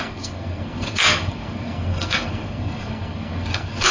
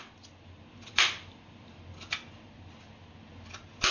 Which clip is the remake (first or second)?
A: first